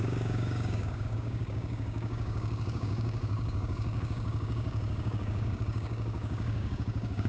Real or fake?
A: fake